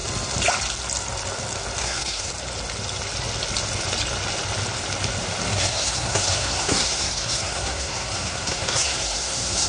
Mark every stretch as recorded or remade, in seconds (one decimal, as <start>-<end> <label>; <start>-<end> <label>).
0.0-1.8 recorded; 1.8-2.3 remade; 2.3-5.5 recorded; 5.5-9.7 remade